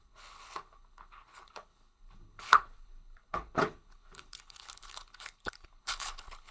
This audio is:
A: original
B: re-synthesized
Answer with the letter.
B